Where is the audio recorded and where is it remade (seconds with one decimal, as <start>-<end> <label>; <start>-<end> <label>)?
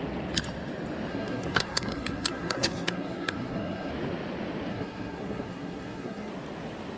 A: 0.0-1.1 recorded; 1.1-3.9 remade; 3.9-4.7 recorded; 4.7-6.3 remade; 6.3-7.0 recorded